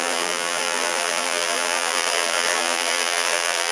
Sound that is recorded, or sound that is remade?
remade